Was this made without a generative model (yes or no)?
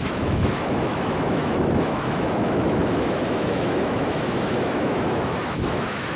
no